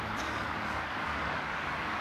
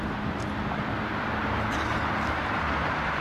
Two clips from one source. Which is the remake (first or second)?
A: first